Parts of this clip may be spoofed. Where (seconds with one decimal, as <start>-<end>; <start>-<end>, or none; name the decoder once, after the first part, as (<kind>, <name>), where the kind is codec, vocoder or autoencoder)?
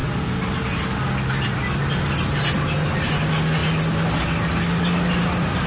none